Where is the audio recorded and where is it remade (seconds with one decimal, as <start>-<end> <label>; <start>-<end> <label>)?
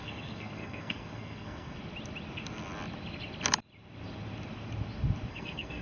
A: 0.0-1.8 remade; 1.8-5.3 recorded; 5.3-5.8 remade